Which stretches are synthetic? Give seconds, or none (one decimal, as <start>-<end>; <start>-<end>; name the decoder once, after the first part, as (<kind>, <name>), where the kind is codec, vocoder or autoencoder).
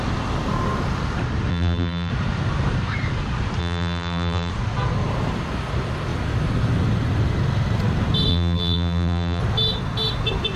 1.5-2.1 (vocoder, BigVGAN v2); 3.6-4.5; 8.3-9.4